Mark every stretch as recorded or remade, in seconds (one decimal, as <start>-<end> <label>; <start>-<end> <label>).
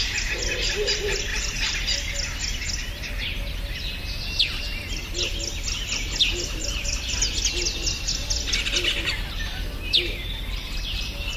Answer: 0.0-1.3 recorded; 1.3-3.2 remade; 3.2-11.4 recorded